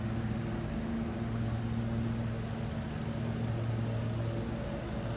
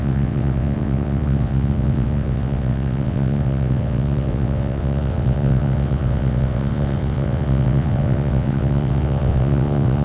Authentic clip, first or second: first